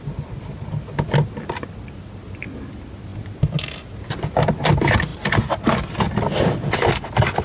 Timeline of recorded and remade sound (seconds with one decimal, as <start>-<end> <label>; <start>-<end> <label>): 0.0-7.4 recorded

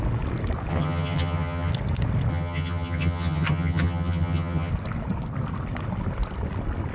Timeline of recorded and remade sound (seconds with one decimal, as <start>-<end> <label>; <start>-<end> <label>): 0.0-0.7 recorded; 0.7-1.7 remade; 1.7-2.3 recorded; 2.3-4.7 remade; 4.7-6.9 recorded

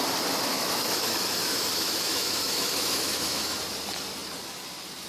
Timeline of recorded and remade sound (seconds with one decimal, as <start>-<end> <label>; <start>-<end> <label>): 0.0-0.5 recorded; 0.5-3.6 remade; 3.6-5.1 recorded

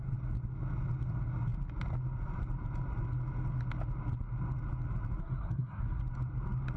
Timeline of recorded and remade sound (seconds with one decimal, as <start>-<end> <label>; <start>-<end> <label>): 0.0-5.2 recorded; 5.2-6.0 remade; 6.0-6.8 recorded

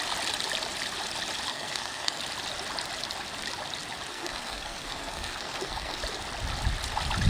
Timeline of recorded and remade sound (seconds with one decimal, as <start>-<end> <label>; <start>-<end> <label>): 0.0-1.5 recorded; 1.5-2.2 remade; 2.2-4.1 recorded; 4.1-6.0 remade; 6.0-7.3 recorded

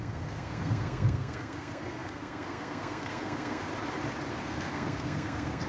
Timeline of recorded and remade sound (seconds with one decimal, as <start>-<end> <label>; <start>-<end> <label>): 0.0-3.7 remade; 3.7-4.3 recorded; 4.3-5.7 remade

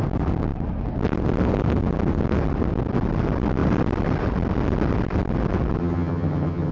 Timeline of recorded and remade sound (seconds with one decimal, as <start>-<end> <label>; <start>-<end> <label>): 0.0-5.8 recorded; 5.8-6.7 remade